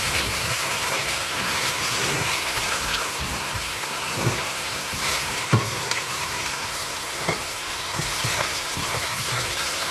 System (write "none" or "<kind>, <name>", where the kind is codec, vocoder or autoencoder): codec, SNAC